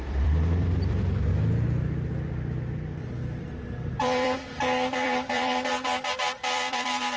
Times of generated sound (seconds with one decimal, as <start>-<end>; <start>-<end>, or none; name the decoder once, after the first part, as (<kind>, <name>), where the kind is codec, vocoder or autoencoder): 0.0-1.3 (vocoder, BigVGAN v2); 3.4-7.2